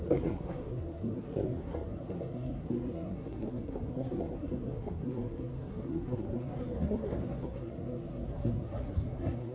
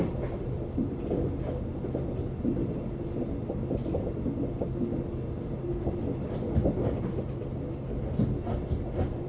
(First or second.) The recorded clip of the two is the second